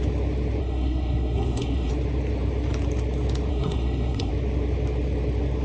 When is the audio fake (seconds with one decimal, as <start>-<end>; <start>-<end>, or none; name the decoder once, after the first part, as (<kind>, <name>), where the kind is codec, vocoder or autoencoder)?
0.6-1.9 (codec, SNAC); 3.5-4.3